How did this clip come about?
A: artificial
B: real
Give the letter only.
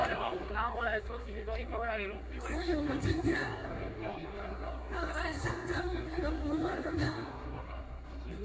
A